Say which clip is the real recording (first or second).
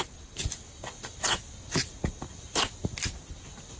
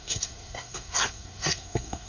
first